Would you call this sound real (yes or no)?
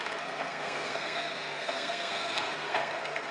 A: no